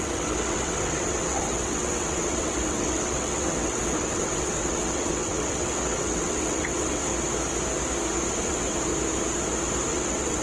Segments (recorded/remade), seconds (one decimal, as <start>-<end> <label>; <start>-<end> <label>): 0.0-7.1 remade; 7.1-8.4 recorded; 8.4-8.9 remade; 8.9-9.9 recorded; 9.9-10.4 remade